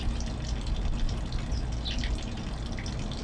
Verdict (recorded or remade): recorded